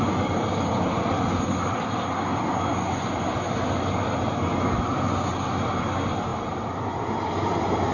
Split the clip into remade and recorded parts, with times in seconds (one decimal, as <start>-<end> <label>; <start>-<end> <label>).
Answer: 0.0-6.3 recorded; 6.3-7.9 remade